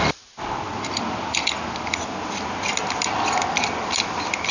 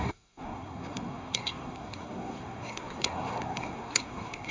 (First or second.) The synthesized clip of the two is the second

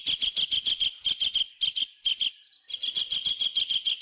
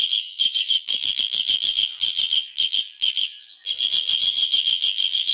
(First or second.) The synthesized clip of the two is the second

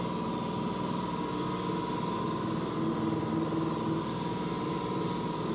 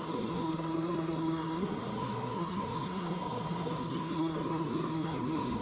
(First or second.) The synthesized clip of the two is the second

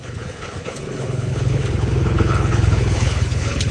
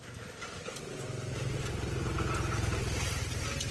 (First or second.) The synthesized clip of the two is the first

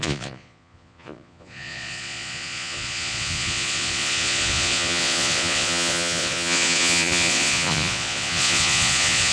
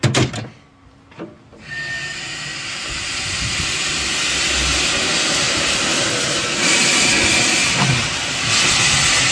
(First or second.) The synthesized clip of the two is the first